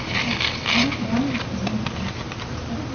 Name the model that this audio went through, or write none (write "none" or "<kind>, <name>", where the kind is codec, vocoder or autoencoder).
none